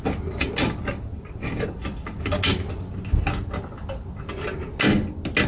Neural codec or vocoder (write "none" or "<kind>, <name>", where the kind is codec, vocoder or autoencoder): none